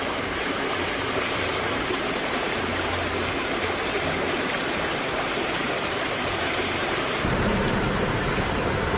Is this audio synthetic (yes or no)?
yes